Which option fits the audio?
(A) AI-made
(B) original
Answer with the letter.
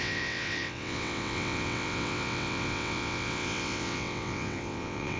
A